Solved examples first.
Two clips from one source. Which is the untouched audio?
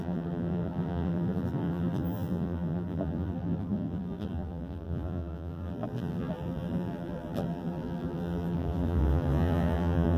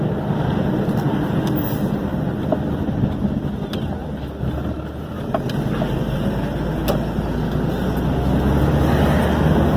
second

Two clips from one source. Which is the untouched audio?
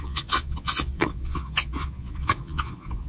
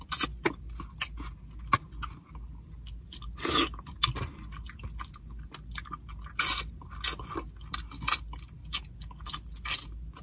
second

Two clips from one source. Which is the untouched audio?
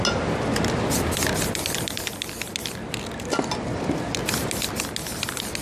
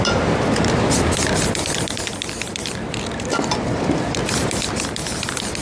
first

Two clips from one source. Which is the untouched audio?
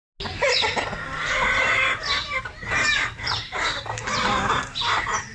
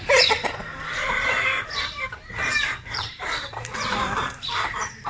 first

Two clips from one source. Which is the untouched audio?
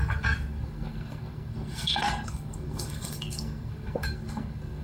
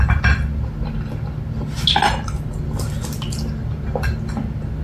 second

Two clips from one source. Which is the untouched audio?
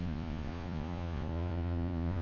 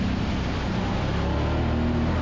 second